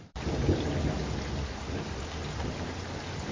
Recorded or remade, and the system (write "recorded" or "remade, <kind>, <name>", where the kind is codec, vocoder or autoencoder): recorded